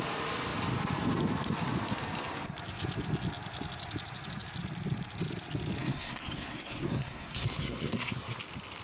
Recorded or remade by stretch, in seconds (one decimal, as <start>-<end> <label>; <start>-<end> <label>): 0.0-5.8 recorded; 5.8-8.4 remade; 8.4-8.8 recorded